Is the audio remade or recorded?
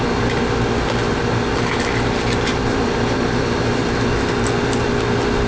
recorded